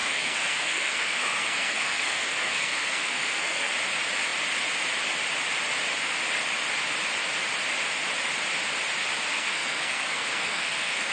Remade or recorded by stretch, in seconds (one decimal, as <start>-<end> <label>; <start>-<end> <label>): 0.0-3.7 remade; 3.7-9.3 recorded; 9.3-11.1 remade